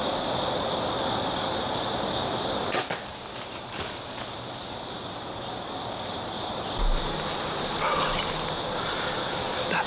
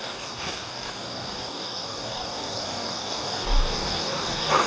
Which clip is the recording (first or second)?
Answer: first